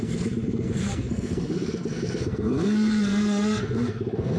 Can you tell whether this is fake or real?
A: fake